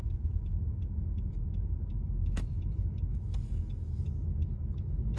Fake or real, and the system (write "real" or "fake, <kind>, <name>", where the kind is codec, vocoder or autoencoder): fake, autoencoder, DAC-VAE